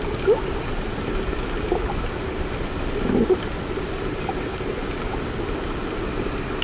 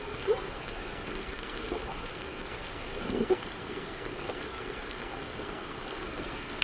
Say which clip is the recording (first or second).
first